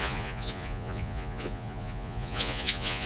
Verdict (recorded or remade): remade